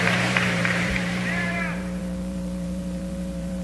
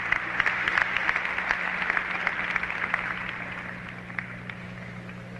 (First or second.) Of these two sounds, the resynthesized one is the first